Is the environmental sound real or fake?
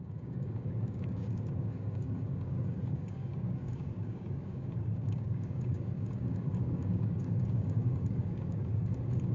fake